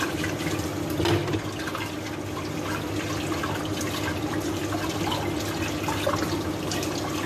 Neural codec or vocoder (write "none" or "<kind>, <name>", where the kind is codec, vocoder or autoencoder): none